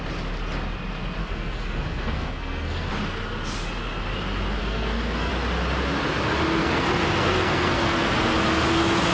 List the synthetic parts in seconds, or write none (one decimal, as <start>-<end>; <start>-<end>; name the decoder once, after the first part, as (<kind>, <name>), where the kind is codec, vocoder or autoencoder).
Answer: 1.2-2.9 (codec, SNAC); 4.6-5.3; 6.6-8.1